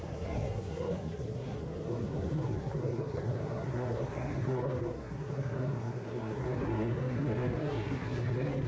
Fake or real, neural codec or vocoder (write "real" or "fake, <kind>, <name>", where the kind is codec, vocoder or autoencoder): fake, codec, SNAC